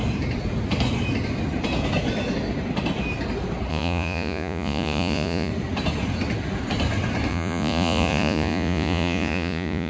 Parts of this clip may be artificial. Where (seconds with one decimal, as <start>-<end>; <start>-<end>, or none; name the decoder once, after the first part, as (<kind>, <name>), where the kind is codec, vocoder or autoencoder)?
3.7-5.5 (vocoder, Vocos); 7.3-9.9